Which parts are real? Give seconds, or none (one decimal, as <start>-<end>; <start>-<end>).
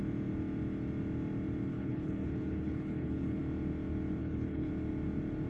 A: 0.0-1.7; 3.4-4.2; 4.7-5.5